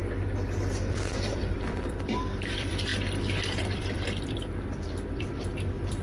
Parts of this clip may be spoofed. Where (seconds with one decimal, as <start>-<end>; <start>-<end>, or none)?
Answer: 1.3-2.9; 3.6-6.0